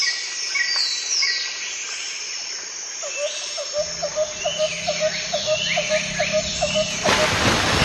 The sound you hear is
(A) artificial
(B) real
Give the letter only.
B